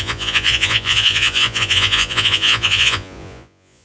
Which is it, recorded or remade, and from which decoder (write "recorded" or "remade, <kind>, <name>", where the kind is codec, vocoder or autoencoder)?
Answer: remade, vocoder, Vocos